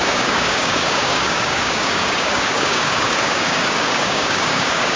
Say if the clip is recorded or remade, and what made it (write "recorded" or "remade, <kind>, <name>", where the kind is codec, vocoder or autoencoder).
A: remade, codec, DAC